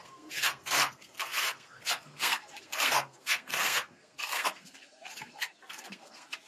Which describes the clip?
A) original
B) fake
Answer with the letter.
B